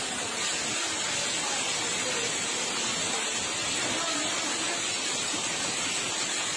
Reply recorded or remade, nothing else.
recorded